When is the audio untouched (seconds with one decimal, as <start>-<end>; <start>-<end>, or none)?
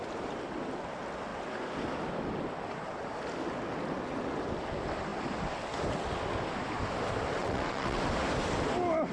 0.0-7.4; 8.0-9.1